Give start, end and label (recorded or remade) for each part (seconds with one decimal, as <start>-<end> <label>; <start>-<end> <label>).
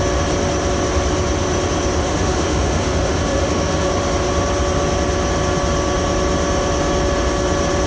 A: 0.0-2.0 recorded; 2.0-3.9 remade; 3.9-7.9 recorded